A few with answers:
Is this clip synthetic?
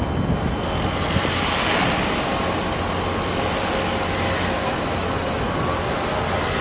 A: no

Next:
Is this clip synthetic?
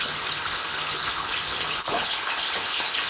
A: yes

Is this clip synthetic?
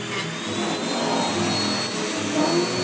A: no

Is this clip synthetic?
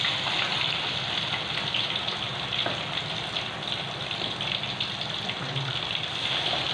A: no